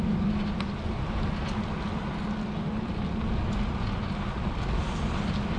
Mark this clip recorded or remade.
recorded